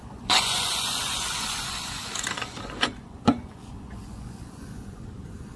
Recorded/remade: remade